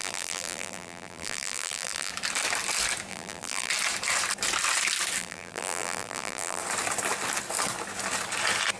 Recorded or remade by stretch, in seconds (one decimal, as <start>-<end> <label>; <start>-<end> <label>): 0.0-2.1 remade; 2.1-3.1 recorded; 3.1-3.7 remade; 3.7-5.2 recorded; 5.2-6.6 remade; 6.6-8.8 recorded